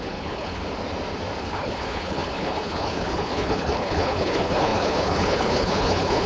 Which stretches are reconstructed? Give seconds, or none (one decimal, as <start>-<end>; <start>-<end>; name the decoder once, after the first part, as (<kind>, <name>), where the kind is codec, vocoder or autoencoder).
0.0-0.6 (codec, HILCodec); 1.4-6.3